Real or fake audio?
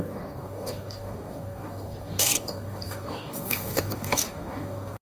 fake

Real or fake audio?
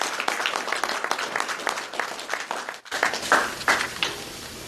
real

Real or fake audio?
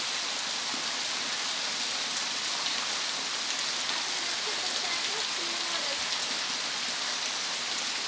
real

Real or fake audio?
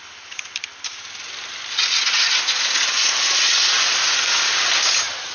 real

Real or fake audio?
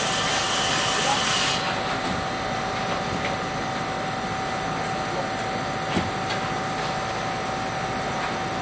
real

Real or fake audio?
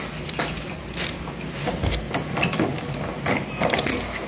real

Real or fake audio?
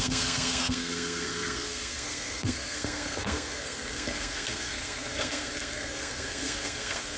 fake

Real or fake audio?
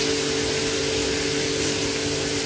real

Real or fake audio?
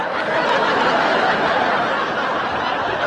real